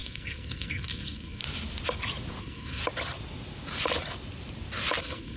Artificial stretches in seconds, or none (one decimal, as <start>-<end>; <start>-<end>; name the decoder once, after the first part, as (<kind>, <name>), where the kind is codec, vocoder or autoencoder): 0.0-1.4 (codec, SNAC); 2.4-2.8; 5.0-5.4